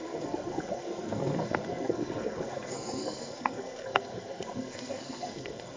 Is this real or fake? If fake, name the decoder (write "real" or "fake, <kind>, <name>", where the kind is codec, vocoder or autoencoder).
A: fake, codec, SNAC